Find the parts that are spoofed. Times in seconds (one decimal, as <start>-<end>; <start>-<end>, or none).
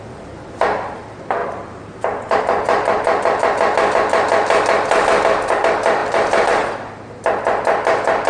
1.4-2.4; 6.0-6.5